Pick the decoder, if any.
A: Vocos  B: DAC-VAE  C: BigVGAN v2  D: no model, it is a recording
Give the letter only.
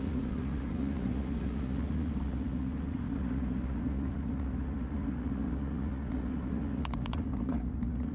A